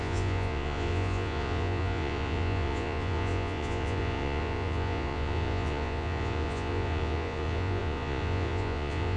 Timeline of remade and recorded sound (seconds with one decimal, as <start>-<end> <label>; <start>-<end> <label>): 0.0-9.2 remade